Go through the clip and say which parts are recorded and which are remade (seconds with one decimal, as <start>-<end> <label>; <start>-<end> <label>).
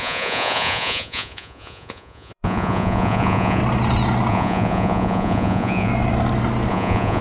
0.0-3.6 remade; 3.6-4.3 recorded; 4.3-5.9 remade; 5.9-6.7 recorded; 6.7-7.2 remade